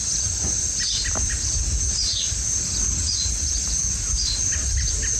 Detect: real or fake real